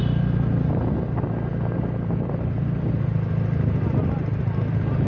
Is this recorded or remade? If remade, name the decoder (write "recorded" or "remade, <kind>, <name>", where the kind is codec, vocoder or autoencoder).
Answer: recorded